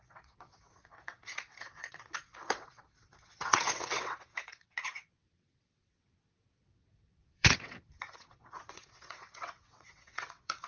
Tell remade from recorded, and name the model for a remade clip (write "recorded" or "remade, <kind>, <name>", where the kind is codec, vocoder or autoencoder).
remade, vocoder, WaveNeXt